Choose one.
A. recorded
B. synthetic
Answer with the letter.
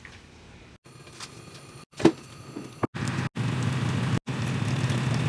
A